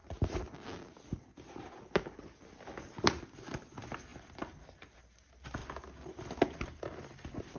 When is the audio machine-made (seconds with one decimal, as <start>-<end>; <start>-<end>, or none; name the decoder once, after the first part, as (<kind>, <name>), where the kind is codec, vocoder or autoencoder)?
none